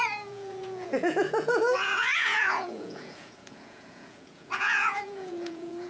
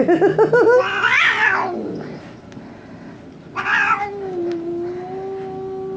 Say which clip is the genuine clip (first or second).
second